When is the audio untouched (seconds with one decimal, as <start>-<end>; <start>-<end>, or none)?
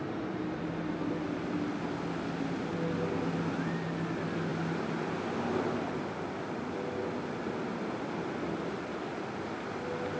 0.0-10.2